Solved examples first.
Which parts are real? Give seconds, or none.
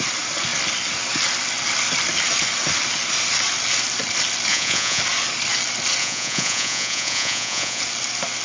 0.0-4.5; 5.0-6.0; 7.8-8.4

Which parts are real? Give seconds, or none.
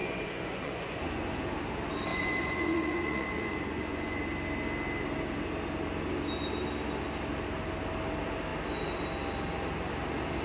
1.4-2.1; 4.2-10.4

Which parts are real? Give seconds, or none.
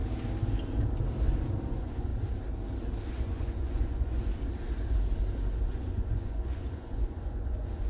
0.0-1.7; 2.1-3.1; 4.3-5.6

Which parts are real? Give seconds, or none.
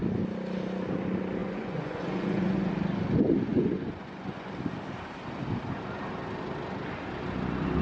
0.0-1.4; 2.7-3.5; 4.5-7.8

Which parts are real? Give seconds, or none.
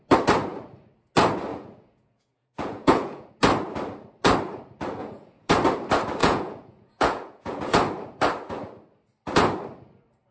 0.0-1.5; 3.3-5.0; 5.5-6.2; 7.6-10.3